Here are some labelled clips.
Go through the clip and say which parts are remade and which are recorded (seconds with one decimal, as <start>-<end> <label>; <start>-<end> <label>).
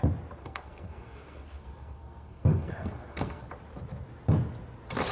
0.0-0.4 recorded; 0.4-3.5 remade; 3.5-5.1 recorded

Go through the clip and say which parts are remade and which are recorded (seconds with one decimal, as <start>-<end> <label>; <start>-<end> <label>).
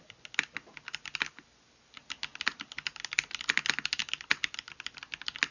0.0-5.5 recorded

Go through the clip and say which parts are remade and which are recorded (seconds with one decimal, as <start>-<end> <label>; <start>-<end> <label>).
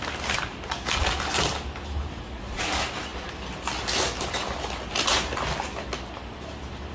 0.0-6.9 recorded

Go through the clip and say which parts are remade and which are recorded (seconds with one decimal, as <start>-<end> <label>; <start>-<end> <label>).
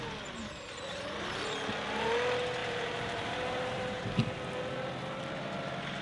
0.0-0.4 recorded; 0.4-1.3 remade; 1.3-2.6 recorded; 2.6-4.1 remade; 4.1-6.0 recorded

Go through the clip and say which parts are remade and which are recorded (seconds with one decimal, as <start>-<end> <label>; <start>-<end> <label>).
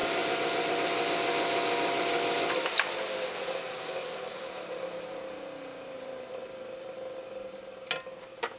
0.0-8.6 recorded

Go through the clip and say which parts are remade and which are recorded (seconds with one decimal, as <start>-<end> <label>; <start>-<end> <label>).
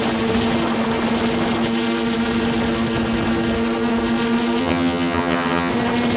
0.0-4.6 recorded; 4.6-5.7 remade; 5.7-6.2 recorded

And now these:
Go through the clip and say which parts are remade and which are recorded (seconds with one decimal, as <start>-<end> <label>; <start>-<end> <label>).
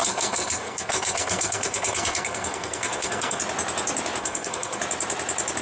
0.0-3.4 remade; 3.4-4.2 recorded; 4.2-4.8 remade; 4.8-5.6 recorded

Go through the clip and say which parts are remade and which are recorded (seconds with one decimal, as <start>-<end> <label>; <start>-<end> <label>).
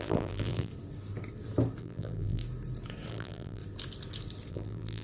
0.0-0.7 remade; 0.7-1.8 recorded; 1.8-2.4 remade; 2.4-3.1 recorded; 3.1-3.6 remade; 3.6-4.5 recorded; 4.5-5.0 remade